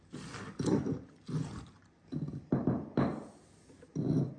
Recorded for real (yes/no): no